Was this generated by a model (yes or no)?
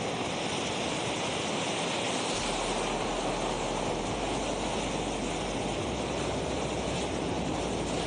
no